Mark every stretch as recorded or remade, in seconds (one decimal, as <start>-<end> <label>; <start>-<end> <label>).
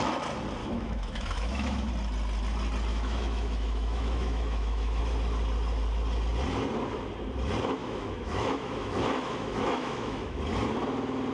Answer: 0.0-0.6 recorded; 0.6-1.9 remade; 1.9-2.9 recorded; 2.9-5.0 remade; 5.0-7.8 recorded; 7.8-10.4 remade; 10.4-11.3 recorded